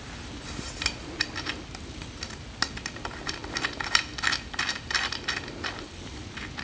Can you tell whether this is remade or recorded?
recorded